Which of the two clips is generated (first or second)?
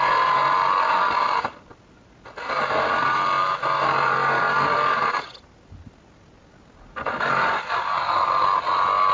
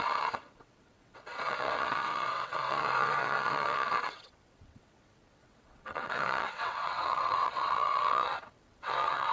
second